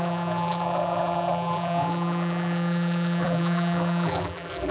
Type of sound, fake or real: fake